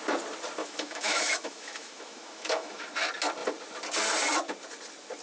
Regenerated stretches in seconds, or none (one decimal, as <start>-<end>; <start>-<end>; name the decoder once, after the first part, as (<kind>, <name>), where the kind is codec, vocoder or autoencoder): 0.6-2.9 (autoencoder, DAC-VAE)